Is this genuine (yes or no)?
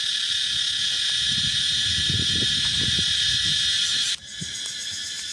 yes